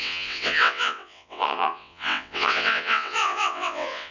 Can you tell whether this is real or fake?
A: fake